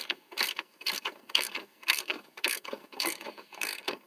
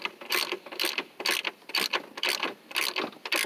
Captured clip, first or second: second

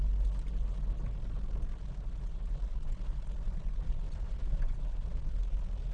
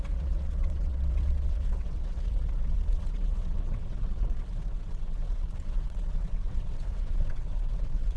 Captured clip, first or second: first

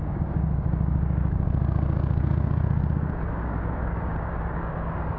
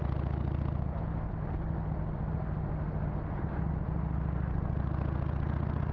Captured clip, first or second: second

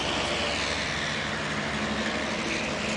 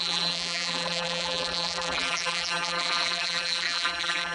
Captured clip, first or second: first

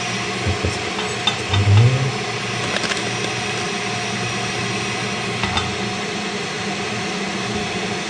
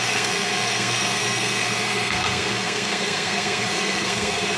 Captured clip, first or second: first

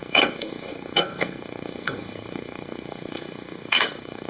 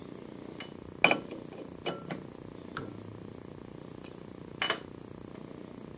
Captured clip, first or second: second